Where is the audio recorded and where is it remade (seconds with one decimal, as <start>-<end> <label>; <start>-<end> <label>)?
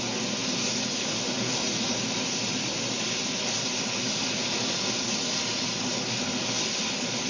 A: 0.0-7.3 recorded